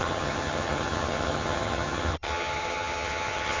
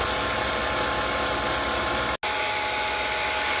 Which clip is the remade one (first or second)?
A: first